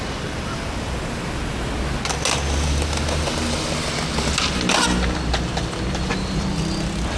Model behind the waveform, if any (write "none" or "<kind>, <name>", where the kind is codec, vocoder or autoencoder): none